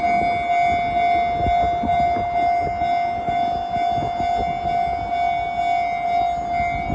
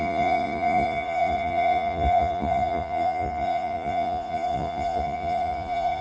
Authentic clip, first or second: first